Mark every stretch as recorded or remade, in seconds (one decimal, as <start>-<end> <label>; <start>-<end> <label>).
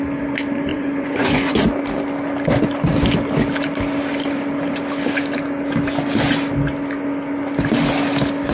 0.0-0.7 recorded; 0.7-1.6 remade; 1.6-8.5 recorded